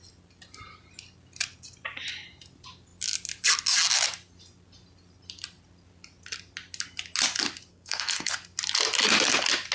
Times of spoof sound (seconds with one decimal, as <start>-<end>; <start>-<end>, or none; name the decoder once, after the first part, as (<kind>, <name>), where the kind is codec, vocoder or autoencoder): 7.7-8.3 (codec, SNAC)